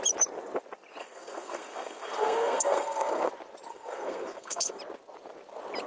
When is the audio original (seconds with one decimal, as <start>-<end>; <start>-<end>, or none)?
0.0-1.0; 3.3-3.7; 4.8-5.9